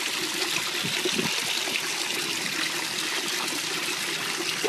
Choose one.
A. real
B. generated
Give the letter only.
A